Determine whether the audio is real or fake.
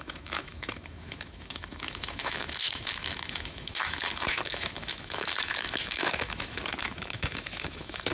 fake